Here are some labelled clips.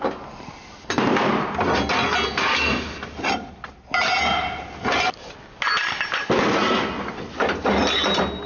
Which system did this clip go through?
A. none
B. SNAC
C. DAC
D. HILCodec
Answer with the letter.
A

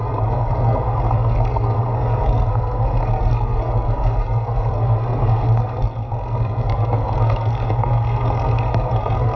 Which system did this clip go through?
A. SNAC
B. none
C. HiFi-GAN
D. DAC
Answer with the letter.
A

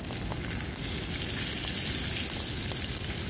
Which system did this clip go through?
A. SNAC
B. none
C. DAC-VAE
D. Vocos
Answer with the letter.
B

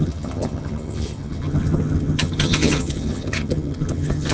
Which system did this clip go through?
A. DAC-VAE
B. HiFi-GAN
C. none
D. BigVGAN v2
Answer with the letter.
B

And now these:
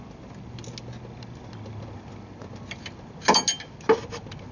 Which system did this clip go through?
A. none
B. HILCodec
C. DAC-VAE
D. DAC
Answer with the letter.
A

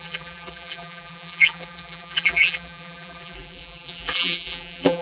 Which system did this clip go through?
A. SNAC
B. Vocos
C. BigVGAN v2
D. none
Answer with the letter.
C